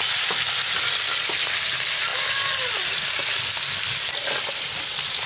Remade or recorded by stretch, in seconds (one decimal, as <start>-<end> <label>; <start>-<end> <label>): 0.0-5.3 recorded

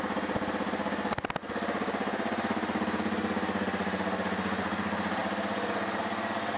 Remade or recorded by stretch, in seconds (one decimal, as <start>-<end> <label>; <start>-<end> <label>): 0.0-5.2 recorded; 5.2-6.0 remade; 6.0-6.6 recorded

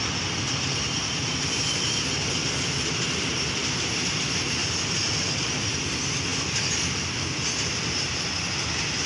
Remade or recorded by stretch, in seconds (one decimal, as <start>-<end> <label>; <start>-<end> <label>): 0.0-4.6 recorded; 4.6-5.8 remade; 5.8-6.3 recorded; 6.3-7.1 remade; 7.1-9.1 recorded

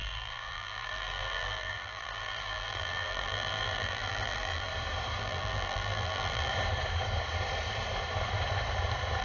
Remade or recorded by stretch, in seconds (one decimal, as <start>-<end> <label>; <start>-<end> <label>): 0.0-4.7 remade; 4.7-5.2 recorded; 5.2-6.5 remade; 6.5-9.2 recorded

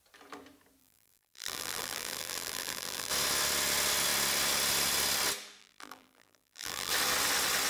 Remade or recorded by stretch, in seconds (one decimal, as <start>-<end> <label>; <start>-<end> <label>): 0.0-0.8 recorded; 0.8-3.1 remade; 3.1-5.6 recorded; 5.6-6.9 remade; 6.9-7.7 recorded

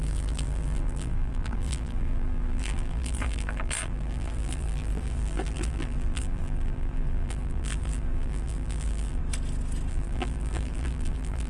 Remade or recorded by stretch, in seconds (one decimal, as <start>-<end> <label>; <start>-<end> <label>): 0.0-9.2 remade; 9.2-9.9 recorded; 9.9-11.5 remade

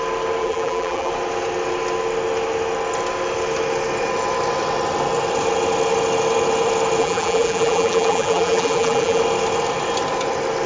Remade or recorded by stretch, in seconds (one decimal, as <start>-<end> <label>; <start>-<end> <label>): 0.0-0.4 recorded; 0.4-1.1 remade; 1.1-7.0 recorded; 7.0-9.2 remade; 9.2-10.7 recorded